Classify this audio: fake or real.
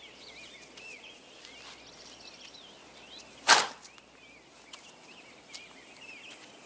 real